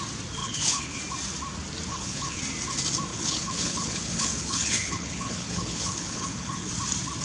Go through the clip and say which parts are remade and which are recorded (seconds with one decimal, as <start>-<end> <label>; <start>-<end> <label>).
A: 0.0-0.4 recorded; 0.4-1.0 remade; 1.0-1.9 recorded; 1.9-2.4 remade; 2.4-3.1 recorded; 3.1-6.7 remade; 6.7-7.2 recorded